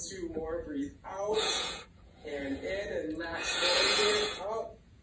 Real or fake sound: fake